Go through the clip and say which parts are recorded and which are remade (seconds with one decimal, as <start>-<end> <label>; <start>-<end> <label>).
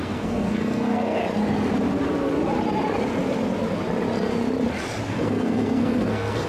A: 0.0-1.2 remade; 1.2-5.1 recorded; 5.1-6.5 remade